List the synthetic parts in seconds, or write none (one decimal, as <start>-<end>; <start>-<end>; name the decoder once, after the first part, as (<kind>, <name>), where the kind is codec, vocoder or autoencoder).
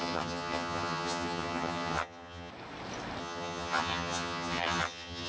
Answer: 0.0-2.5 (vocoder, HiFi-GAN); 3.2-5.3